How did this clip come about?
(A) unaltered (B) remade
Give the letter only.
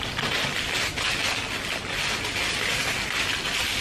A